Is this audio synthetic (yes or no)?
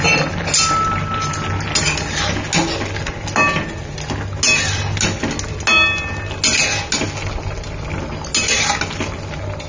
no